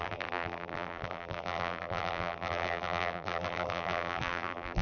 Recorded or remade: remade